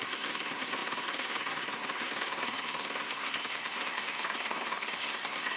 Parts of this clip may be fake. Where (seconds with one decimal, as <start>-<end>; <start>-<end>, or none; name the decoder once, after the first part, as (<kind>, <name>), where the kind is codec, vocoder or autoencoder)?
0.0-5.6 (codec, SNAC)